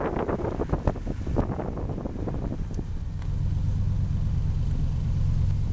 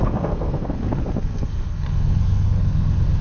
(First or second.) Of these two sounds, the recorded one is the first